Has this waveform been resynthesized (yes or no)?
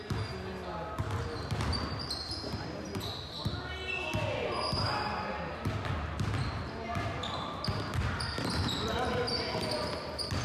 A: no